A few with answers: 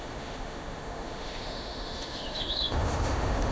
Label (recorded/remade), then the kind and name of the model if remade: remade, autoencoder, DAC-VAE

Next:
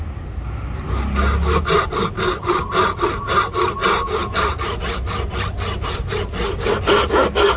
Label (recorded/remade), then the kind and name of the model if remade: recorded